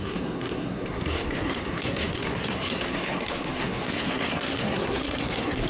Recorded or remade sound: remade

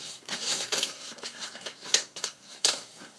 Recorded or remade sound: remade